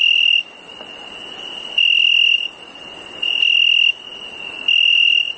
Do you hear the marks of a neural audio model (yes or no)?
no